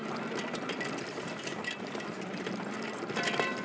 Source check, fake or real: real